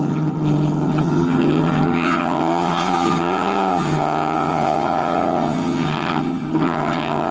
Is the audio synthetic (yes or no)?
yes